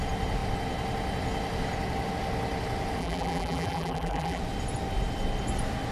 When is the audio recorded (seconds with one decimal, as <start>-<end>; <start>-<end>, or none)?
0.0-3.0; 4.4-5.9